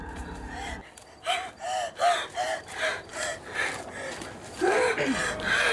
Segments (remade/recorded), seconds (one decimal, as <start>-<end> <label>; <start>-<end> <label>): 0.0-0.8 remade; 0.8-2.4 recorded; 2.4-3.1 remade; 3.1-4.7 recorded; 4.7-5.7 remade